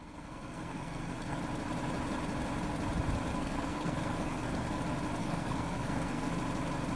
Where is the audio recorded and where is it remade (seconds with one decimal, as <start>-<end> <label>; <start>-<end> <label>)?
0.0-1.4 remade; 1.4-3.3 recorded; 3.3-4.8 remade; 4.8-5.2 recorded; 5.2-6.3 remade; 6.3-7.0 recorded